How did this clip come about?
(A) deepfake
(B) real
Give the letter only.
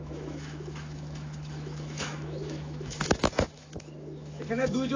A